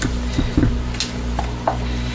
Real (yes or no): yes